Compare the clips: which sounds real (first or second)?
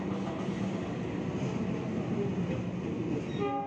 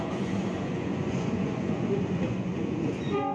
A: first